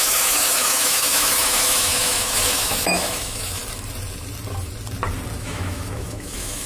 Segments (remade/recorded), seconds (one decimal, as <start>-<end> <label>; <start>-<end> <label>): 0.0-3.6 remade; 3.6-5.4 recorded; 5.4-6.7 remade